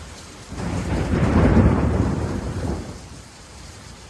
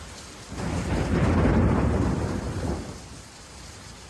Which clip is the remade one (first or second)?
first